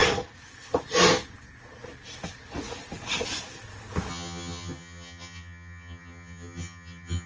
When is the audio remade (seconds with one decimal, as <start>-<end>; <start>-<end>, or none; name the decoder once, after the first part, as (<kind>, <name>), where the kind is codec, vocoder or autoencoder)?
4.1-7.3 (vocoder, HiFi-GAN)